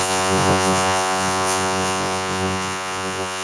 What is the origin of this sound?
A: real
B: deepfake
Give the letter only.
B